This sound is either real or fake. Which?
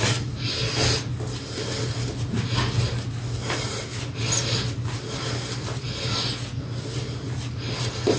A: real